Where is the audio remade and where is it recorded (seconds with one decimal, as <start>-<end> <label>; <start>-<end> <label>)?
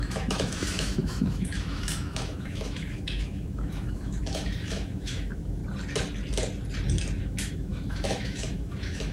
0.0-5.6 remade; 5.6-7.2 recorded; 7.2-9.1 remade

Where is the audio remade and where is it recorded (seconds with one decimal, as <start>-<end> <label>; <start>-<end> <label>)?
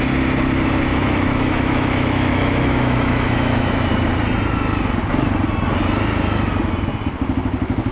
0.0-0.9 recorded; 0.9-3.9 remade; 3.9-7.9 recorded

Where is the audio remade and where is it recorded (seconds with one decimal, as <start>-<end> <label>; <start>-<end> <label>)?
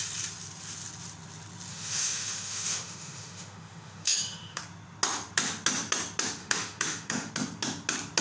0.0-1.7 recorded; 1.7-4.6 remade; 4.6-6.4 recorded; 6.4-7.3 remade; 7.3-8.2 recorded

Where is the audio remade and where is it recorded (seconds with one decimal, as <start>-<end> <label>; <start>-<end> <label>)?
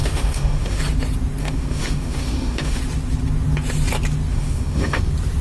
0.0-0.8 remade; 0.8-1.4 recorded; 1.4-2.8 remade; 2.8-4.3 recorded; 4.3-5.0 remade; 5.0-5.4 recorded